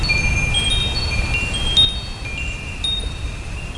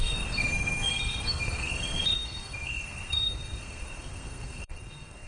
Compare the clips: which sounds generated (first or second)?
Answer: second